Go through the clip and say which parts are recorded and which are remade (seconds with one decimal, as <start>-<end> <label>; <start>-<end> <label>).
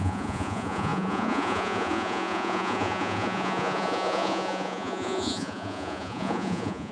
0.0-6.9 remade